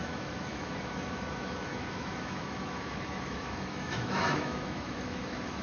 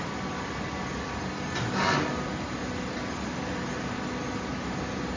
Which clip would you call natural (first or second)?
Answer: second